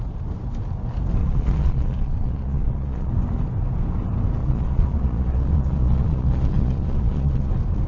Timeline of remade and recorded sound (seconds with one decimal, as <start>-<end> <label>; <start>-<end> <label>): 0.0-1.2 recorded; 1.2-3.1 remade; 3.1-4.4 recorded; 4.4-7.5 remade; 7.5-7.9 recorded